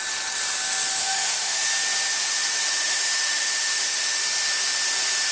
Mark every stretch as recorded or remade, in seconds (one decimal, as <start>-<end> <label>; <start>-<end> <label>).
0.0-1.0 recorded; 1.0-1.7 remade; 1.7-2.1 recorded; 2.1-4.2 remade; 4.2-5.3 recorded